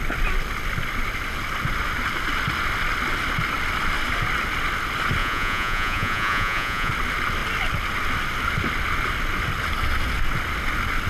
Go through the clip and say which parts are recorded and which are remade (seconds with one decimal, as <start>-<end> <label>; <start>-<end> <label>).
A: 0.0-5.2 recorded; 5.2-6.9 remade; 6.9-11.1 recorded